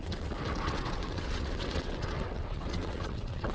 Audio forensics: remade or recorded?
remade